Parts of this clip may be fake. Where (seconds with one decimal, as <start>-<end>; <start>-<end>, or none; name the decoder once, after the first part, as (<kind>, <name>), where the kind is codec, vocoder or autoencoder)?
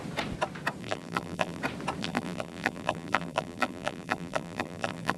0.8-1.6 (vocoder, BigVGAN v2); 2.0-5.2